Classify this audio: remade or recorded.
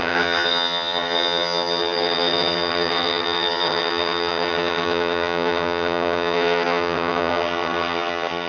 remade